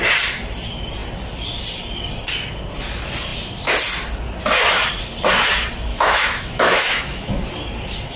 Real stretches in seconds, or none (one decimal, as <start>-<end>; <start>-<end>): 0.0-5.9; 7.3-8.2